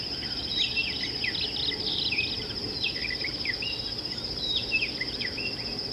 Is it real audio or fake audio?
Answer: real